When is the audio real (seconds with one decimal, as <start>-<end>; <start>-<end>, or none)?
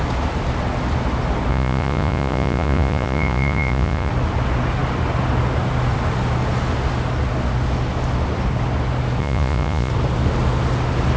0.0-1.5; 4.1-9.2; 9.9-11.2